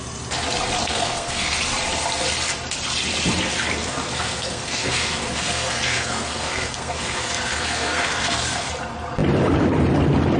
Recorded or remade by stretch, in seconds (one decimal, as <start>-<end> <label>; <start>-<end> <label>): 0.0-0.8 recorded; 0.8-1.6 remade; 1.6-3.8 recorded; 3.8-8.7 remade; 8.7-10.4 recorded